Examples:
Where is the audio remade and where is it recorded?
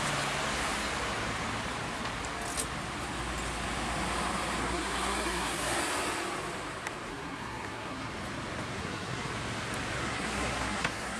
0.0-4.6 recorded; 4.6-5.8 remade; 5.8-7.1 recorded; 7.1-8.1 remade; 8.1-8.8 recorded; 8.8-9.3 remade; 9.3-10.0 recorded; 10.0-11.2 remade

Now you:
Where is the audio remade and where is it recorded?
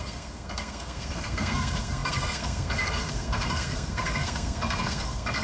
0.0-5.4 remade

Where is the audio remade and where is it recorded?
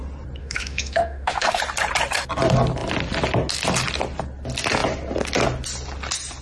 0.0-0.4 recorded; 0.4-1.6 remade; 1.6-6.4 recorded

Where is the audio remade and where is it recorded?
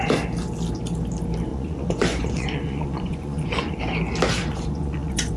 0.0-1.5 recorded; 1.5-3.8 remade; 3.8-4.4 recorded; 4.4-5.4 remade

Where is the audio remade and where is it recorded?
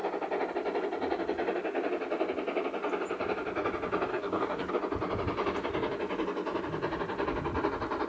0.0-4.1 recorded; 4.1-4.7 remade; 4.7-8.1 recorded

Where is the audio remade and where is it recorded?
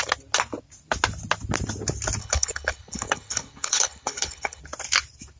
0.0-2.2 recorded; 2.2-4.6 remade; 4.6-5.4 recorded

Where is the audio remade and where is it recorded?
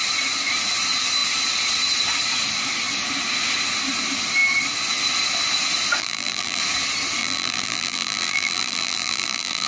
0.0-6.0 recorded; 6.0-6.6 remade; 6.6-7.2 recorded; 7.2-9.7 remade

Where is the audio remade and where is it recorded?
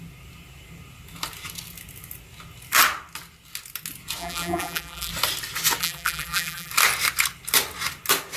0.0-4.2 recorded; 4.2-5.1 remade; 5.1-5.8 recorded; 5.8-6.7 remade; 6.7-8.4 recorded